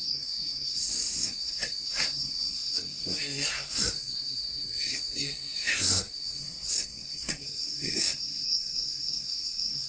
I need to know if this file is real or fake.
fake